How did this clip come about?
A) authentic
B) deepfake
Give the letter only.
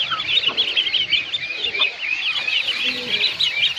A